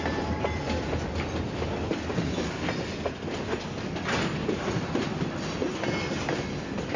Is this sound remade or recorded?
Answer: recorded